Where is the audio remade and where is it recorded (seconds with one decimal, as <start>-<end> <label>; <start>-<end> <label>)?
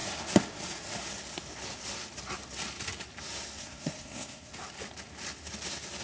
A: 0.0-3.6 recorded; 3.6-4.5 remade; 4.5-6.0 recorded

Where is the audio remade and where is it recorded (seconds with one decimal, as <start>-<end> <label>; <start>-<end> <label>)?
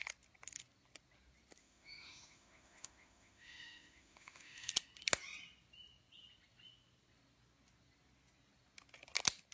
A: 0.0-1.6 recorded; 1.6-4.7 remade; 4.7-9.5 recorded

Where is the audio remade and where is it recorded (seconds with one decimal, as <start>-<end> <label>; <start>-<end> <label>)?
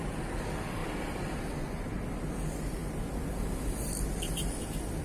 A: 0.0-5.0 recorded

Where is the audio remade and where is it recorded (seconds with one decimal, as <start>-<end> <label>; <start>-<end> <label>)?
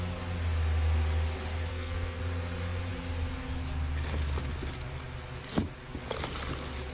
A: 0.0-1.7 recorded; 1.7-2.2 remade; 2.2-6.9 recorded